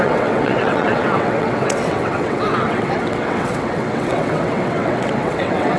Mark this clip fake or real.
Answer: fake